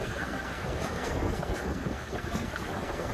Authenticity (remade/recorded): remade